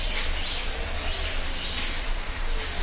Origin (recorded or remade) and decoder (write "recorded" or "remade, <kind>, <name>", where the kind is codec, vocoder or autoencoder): recorded